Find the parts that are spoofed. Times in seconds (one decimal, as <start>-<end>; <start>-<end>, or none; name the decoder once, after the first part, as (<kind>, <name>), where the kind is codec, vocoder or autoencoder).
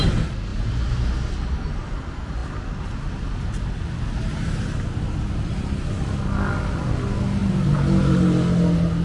none